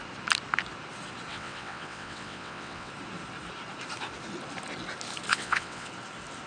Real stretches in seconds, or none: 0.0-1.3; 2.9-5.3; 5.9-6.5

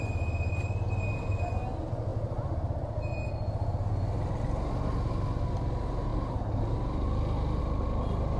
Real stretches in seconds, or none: 0.0-8.4

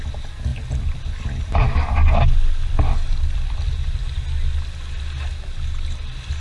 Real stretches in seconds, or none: 0.0-6.4

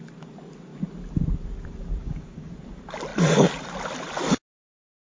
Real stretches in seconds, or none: 0.0-2.0; 2.5-5.1

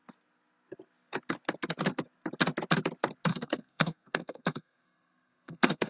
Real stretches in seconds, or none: 0.0-3.3

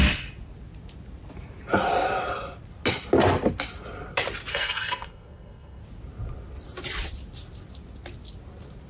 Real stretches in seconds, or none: 0.0-4.5; 5.8-8.9

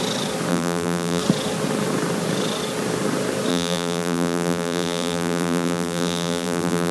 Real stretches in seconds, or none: 0.0-0.5; 1.2-3.5

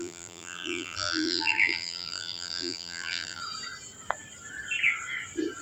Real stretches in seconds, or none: 3.4-5.6